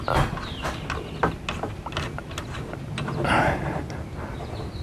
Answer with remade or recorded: recorded